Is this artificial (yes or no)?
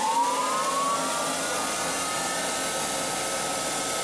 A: no